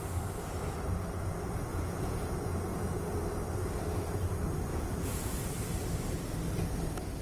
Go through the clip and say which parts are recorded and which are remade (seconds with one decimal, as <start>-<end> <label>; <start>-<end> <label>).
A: 0.0-1.7 recorded; 1.7-2.3 remade; 2.3-2.7 recorded; 2.7-3.2 remade; 3.2-4.7 recorded; 4.7-5.4 remade; 5.4-7.2 recorded